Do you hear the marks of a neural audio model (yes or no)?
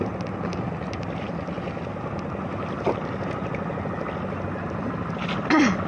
no